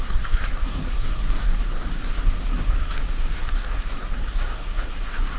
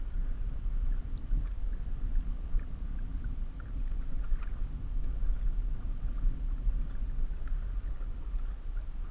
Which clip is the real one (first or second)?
second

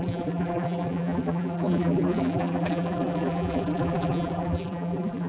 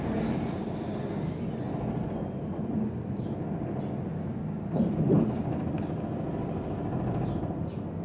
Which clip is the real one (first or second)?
second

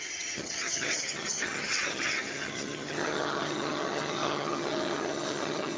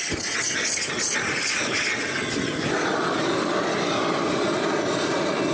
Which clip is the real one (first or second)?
second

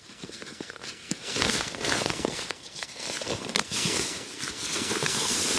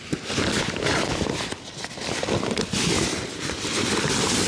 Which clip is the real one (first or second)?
second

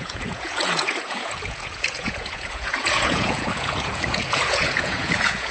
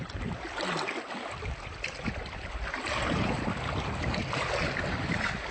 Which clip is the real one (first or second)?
second